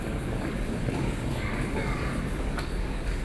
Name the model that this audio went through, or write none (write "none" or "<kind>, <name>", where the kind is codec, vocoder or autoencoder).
codec, DAC